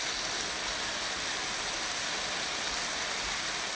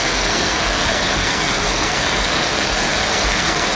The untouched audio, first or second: first